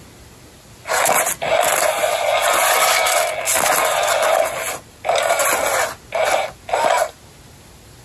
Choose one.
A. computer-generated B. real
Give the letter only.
B